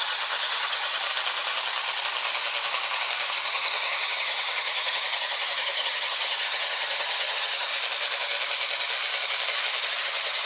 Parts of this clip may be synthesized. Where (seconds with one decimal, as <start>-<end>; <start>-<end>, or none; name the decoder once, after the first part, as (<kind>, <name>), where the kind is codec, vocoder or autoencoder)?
0.0-1.1 (vocoder, HiFi-GAN); 3.3-7.7; 10.0-10.5